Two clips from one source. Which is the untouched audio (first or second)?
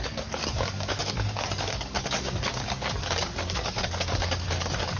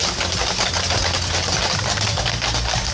second